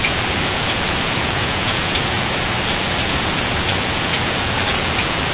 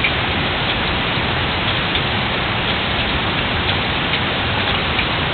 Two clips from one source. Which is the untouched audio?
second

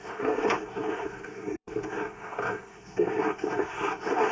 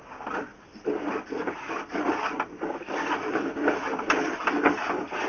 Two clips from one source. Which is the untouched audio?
second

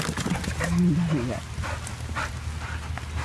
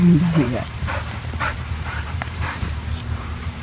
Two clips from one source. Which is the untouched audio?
first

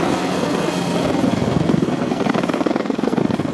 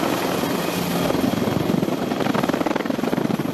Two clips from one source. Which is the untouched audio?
second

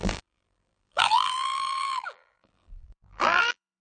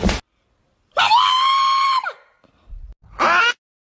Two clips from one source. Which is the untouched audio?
second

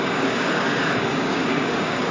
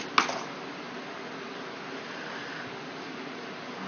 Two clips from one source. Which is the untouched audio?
second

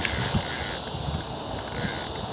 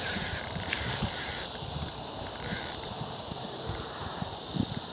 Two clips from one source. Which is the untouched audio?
first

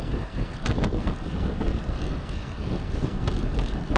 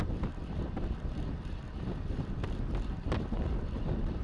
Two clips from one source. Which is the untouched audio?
second